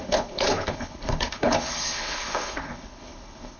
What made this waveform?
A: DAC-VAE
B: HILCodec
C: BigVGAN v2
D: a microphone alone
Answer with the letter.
B